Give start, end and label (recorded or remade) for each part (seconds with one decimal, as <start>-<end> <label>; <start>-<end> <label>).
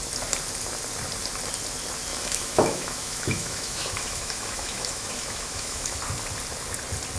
0.0-2.1 recorded; 2.1-6.0 remade; 6.0-7.2 recorded